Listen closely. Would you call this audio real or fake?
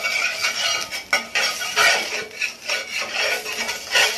real